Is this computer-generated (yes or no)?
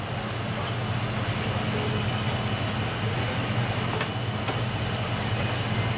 no